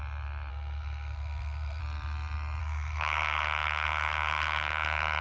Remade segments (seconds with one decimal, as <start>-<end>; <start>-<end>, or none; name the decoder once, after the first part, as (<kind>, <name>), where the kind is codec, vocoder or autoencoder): 0.5-1.8 (codec, SNAC); 2.6-5.2